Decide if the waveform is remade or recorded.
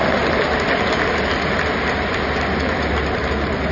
recorded